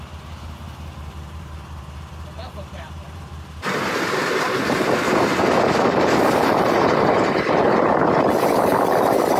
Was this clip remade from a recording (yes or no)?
yes